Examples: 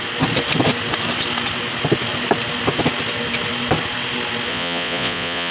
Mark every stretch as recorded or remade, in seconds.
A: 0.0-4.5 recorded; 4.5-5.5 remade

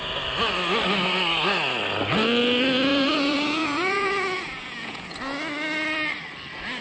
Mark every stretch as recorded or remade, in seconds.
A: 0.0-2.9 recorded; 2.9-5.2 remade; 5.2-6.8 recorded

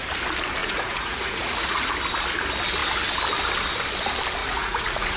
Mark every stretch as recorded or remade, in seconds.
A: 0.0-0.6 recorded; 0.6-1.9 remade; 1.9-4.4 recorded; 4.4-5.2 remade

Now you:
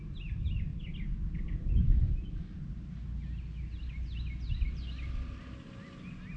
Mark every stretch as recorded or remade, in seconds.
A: 0.0-6.4 recorded